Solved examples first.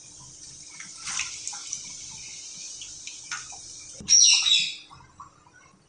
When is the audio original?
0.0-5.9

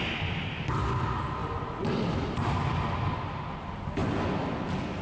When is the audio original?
0.0-4.0; 4.6-5.0